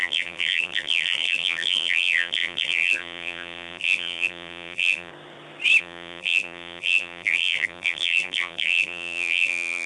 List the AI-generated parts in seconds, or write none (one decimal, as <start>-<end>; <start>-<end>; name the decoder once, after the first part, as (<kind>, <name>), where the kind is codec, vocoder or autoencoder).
0.0-5.1 (vocoder, BigVGAN v2); 5.8-9.9